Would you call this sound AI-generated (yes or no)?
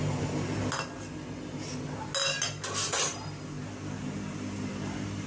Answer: no